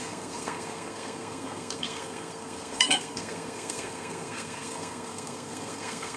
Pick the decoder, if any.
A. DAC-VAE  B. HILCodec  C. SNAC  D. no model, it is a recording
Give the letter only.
C